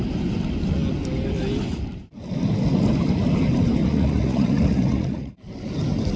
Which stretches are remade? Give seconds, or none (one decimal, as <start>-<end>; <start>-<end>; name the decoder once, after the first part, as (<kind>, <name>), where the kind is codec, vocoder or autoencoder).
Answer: 3.8-5.3 (vocoder, Vocos)